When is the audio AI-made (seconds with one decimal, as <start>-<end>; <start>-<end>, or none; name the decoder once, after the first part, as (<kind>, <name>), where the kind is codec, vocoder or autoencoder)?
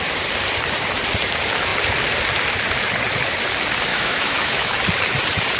3.9-4.7 (autoencoder, DAC-VAE)